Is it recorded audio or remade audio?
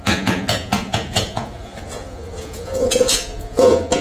remade